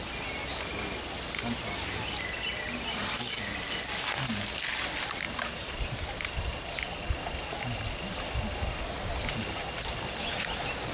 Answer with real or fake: real